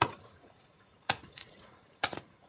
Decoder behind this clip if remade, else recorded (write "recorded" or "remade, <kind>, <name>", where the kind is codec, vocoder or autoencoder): remade, vocoder, Vocos